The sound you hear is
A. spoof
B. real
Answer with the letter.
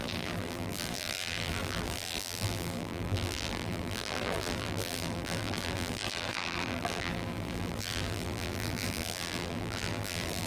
A